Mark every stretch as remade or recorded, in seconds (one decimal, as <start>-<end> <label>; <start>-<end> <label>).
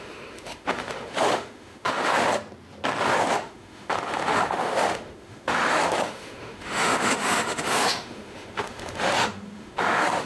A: 0.0-2.3 remade; 2.3-3.0 recorded; 3.0-10.3 remade